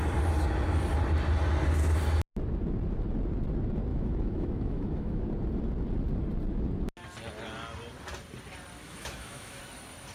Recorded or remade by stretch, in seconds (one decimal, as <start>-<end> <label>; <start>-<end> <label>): 0.0-3.9 recorded; 3.9-5.2 remade; 5.2-8.8 recorded; 8.8-9.6 remade; 9.6-10.1 recorded